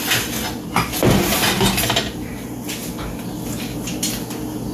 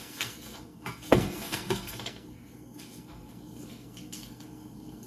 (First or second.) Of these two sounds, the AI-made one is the second